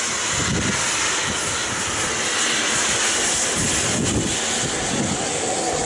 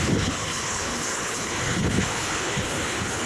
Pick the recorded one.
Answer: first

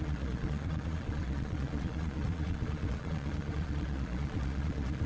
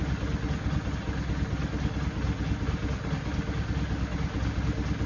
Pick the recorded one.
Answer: second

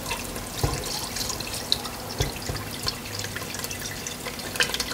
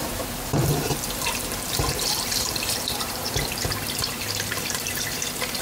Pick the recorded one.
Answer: first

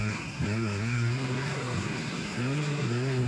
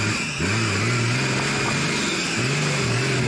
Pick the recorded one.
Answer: second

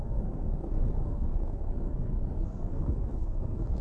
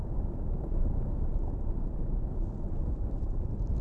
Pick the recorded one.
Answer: second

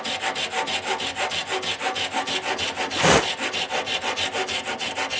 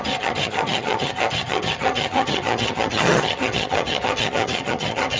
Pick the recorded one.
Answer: first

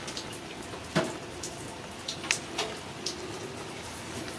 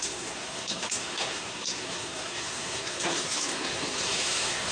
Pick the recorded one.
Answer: first